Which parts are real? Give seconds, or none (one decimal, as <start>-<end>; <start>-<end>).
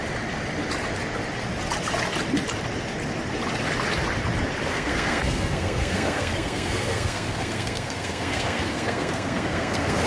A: 0.0-4.7